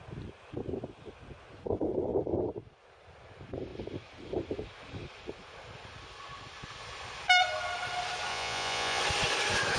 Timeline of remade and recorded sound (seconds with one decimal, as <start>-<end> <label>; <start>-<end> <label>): 0.0-8.3 recorded; 8.3-9.0 remade; 9.0-9.8 recorded